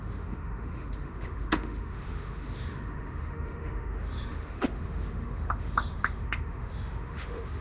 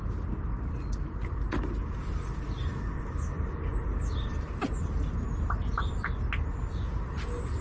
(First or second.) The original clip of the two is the second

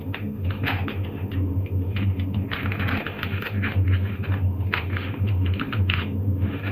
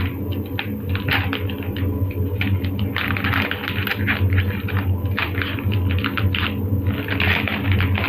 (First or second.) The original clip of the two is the second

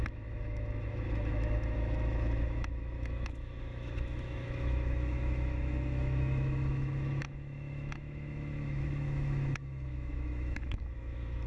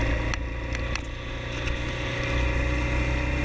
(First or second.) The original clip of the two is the second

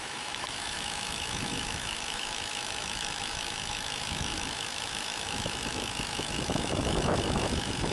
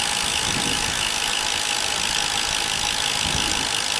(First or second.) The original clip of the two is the second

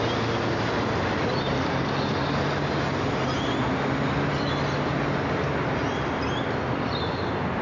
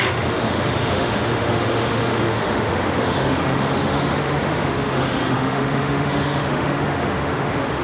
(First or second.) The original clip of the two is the first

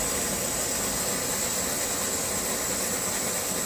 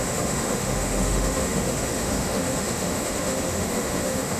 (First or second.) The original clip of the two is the first